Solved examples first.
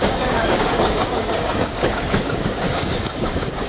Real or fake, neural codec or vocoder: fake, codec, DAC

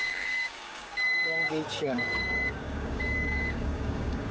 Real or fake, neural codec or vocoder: fake, codec, DAC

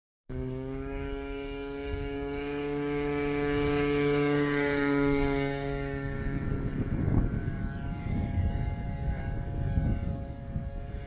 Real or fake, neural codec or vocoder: fake, codec, DAC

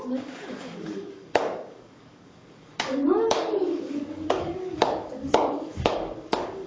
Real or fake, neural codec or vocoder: fake, codec, DAC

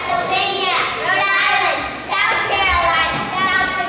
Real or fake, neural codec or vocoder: real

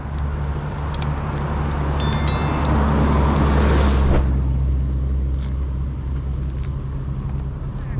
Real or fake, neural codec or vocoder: real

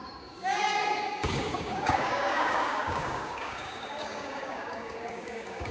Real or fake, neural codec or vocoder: fake, codec, DAC